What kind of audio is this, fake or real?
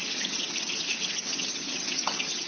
fake